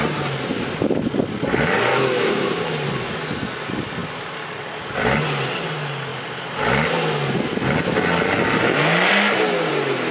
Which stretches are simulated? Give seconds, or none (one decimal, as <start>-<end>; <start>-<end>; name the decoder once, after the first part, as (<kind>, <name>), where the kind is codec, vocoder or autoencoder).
1.9-2.5 (autoencoder, DAC-VAE)